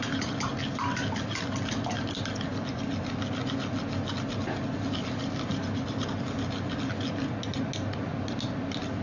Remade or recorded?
recorded